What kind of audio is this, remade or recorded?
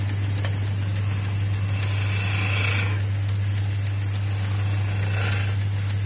recorded